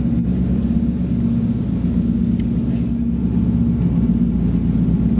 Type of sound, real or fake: real